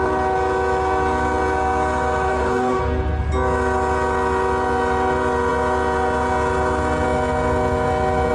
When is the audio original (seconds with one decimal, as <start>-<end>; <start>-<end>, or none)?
0.0-2.3; 2.8-8.3